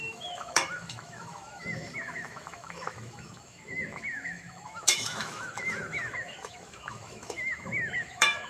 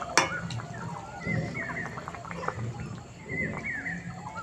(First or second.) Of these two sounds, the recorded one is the second